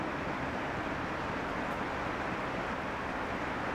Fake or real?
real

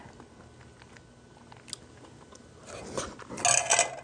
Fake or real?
real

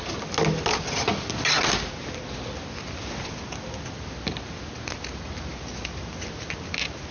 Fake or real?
real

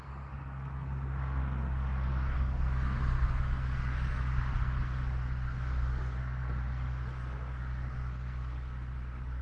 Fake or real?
fake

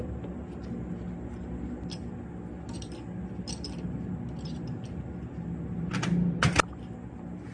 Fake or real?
real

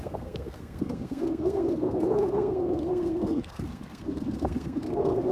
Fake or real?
fake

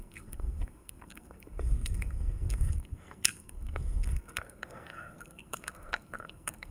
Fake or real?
fake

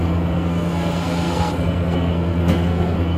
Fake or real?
fake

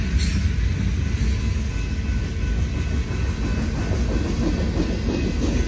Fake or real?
real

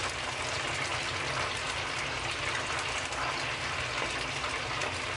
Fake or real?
real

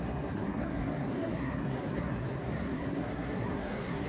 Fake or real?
fake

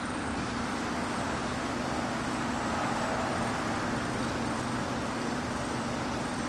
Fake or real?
real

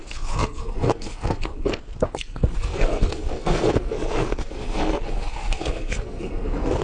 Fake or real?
fake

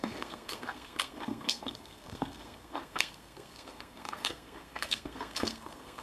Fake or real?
fake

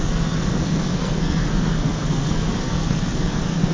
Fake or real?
fake